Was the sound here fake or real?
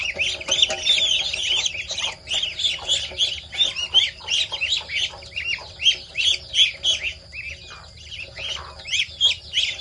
real